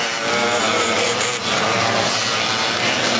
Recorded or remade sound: remade